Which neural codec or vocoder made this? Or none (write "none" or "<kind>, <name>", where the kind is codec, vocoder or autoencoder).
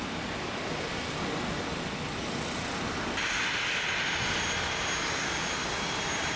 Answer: none